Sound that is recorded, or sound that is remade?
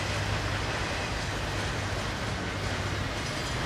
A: recorded